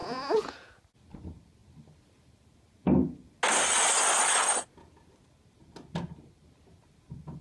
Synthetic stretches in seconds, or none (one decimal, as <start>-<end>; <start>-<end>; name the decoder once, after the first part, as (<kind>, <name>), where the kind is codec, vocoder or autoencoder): 0.0-0.8 (vocoder, Vocos)